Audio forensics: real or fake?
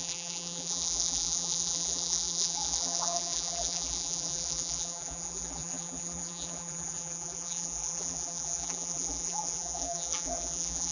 fake